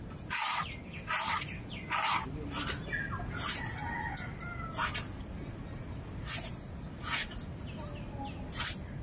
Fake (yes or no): no